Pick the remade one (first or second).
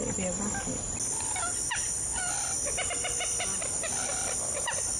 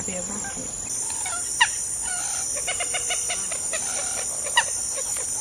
second